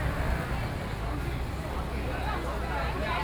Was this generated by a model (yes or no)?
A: no